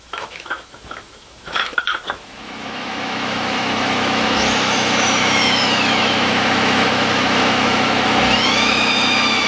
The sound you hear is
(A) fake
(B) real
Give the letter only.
A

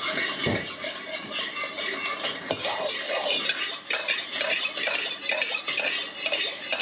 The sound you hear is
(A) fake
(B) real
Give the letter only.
B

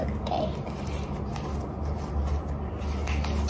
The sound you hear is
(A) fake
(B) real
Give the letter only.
B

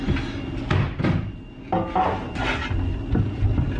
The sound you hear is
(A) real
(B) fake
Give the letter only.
A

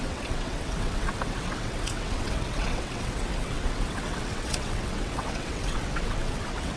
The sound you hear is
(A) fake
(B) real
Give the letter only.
A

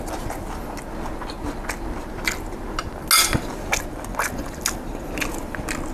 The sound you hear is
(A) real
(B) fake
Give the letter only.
A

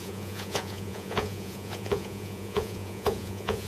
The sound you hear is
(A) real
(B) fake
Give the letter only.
B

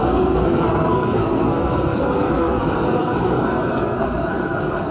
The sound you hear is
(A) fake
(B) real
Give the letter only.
A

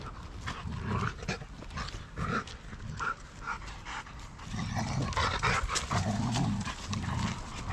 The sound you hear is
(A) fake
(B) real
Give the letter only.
B